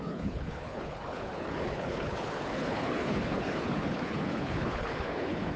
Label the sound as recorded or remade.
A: remade